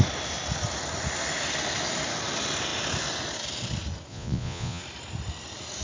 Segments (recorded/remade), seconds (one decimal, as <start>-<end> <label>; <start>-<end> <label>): 0.0-4.1 recorded; 4.1-4.8 remade; 4.8-5.8 recorded